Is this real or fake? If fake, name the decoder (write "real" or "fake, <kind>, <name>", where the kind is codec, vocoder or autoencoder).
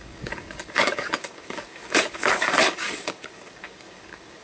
fake, codec, DAC